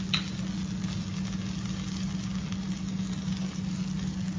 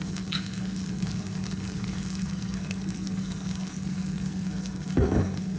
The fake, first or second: second